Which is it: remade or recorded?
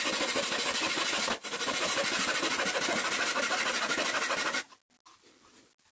recorded